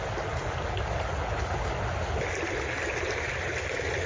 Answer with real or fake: real